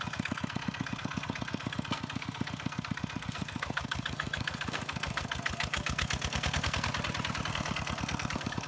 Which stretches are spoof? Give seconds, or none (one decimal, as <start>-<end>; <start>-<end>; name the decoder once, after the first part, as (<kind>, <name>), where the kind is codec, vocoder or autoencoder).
0.0-6.9 (codec, SNAC); 7.5-8.7